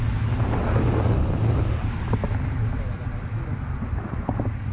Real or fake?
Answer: real